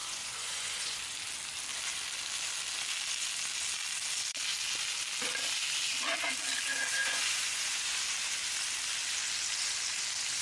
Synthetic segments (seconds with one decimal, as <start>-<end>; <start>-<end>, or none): 0.0-1.0; 7.0-8.0

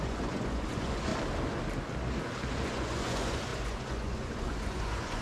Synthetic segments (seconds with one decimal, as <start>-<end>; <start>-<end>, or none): 0.0-1.1; 2.5-5.2

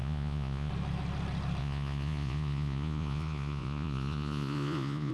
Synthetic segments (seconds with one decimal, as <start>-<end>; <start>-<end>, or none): 0.0-0.7; 1.6-5.1

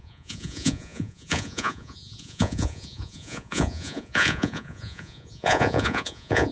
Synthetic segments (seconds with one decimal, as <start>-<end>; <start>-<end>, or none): 0.0-6.5

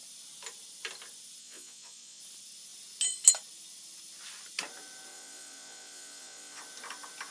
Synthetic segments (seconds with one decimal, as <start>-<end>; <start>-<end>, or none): 1.4-2.2; 5.1-6.6

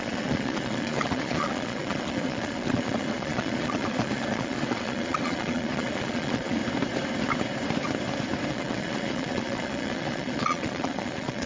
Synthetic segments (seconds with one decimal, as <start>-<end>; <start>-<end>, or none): 0.0-6.6; 8.5-11.5

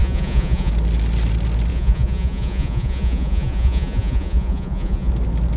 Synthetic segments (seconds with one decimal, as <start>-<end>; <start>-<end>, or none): 0.0-0.7; 1.7-5.1